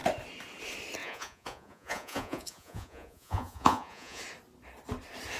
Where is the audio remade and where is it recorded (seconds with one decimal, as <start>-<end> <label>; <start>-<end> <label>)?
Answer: 0.0-1.0 recorded; 1.0-4.2 remade; 4.2-5.4 recorded